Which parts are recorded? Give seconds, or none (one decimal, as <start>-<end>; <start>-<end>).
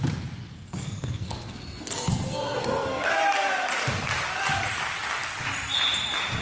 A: 0.0-0.5; 3.1-6.4